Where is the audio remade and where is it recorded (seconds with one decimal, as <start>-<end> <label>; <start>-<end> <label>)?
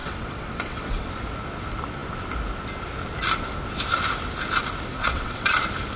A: 0.0-1.1 remade; 1.1-4.9 recorded; 4.9-5.5 remade; 5.5-6.0 recorded